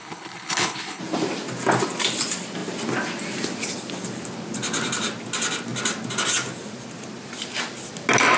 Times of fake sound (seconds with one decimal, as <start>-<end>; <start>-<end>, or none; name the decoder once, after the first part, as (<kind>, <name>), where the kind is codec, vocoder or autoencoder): 0.0-1.0 (codec, HILCodec)